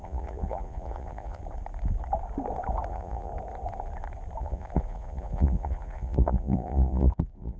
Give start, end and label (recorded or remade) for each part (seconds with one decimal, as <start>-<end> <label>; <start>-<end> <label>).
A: 0.0-1.4 remade; 1.4-2.9 recorded; 2.9-3.3 remade; 3.3-4.4 recorded; 4.4-7.6 remade